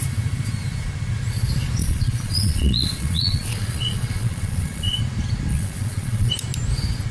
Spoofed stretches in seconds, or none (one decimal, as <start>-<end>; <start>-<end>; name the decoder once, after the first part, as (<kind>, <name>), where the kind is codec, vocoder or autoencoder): 1.8-5.0 (vocoder, Vocos); 5.5-6.3